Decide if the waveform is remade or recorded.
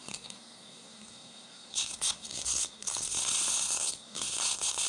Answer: remade